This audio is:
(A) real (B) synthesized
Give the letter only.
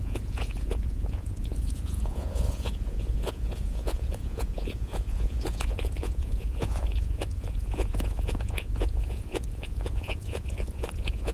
B